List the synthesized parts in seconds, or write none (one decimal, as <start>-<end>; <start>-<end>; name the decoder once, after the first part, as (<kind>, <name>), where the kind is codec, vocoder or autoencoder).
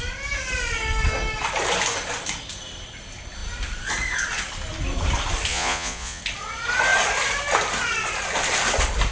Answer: 5.5-6.2 (vocoder, Vocos)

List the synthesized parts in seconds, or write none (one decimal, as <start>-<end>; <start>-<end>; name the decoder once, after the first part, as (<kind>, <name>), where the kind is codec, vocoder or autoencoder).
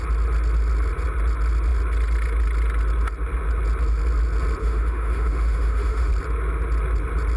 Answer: 4.6-6.1 (autoencoder, DAC-VAE)